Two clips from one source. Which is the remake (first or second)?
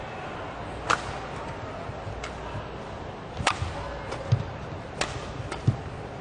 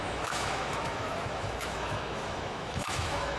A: second